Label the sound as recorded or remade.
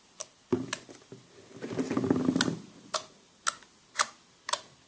recorded